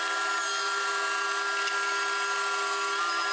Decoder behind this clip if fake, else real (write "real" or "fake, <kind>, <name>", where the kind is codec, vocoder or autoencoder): real